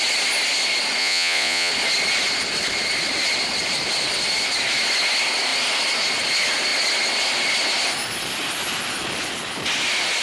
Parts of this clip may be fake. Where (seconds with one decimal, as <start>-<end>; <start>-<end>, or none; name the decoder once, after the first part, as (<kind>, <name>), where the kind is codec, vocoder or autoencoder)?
1.0-1.7 (vocoder, Vocos)

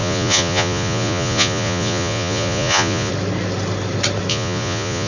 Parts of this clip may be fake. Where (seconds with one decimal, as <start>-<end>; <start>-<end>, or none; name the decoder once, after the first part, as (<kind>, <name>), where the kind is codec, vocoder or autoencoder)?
0.0-3.1 (vocoder, Vocos); 4.3-5.1

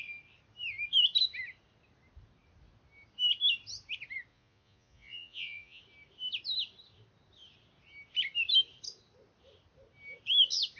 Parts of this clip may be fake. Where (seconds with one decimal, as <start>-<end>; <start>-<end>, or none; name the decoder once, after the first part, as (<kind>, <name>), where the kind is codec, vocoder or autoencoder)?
4.3-5.8 (vocoder, Vocos)

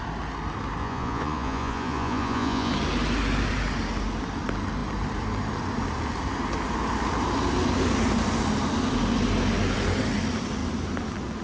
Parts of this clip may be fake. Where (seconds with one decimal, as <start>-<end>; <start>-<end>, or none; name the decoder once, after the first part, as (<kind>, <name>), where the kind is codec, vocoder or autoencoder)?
0.8-2.7 (vocoder, Vocos)

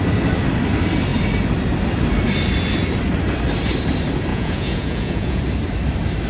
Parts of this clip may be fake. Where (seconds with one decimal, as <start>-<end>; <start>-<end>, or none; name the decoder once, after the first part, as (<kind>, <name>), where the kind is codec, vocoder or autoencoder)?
4.3-5.4 (vocoder, Vocos)